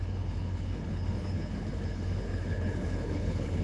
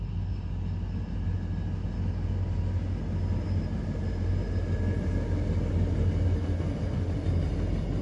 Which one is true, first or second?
second